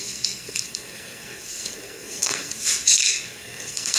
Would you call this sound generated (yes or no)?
yes